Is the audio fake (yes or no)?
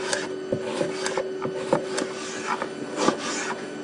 no